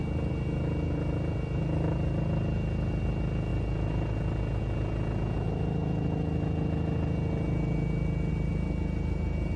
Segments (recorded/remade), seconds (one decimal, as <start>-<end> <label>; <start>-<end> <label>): 0.0-9.6 recorded